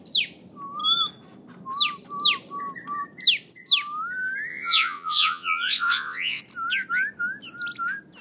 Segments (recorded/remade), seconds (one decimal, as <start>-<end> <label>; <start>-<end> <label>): 0.0-4.5 recorded; 4.5-6.4 remade; 6.4-8.2 recorded